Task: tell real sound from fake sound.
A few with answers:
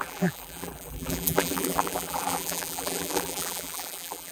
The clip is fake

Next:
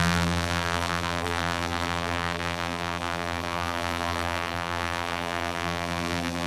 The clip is fake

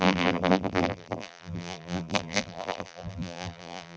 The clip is fake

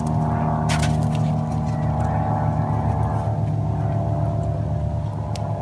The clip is real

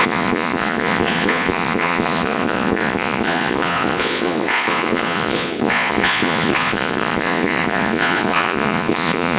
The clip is fake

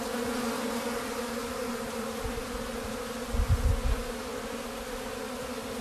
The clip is real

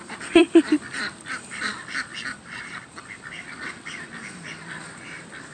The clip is fake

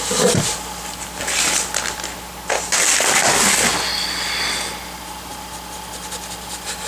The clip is real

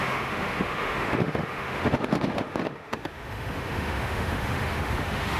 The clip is fake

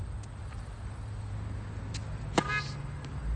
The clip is real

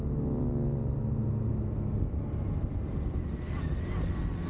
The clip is real